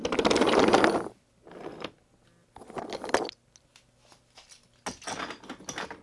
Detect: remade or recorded recorded